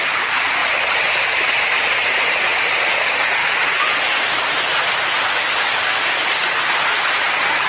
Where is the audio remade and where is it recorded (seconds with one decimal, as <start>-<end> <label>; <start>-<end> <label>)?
0.0-0.6 remade; 0.6-1.3 recorded; 1.3-3.4 remade; 3.4-7.0 recorded; 7.0-7.7 remade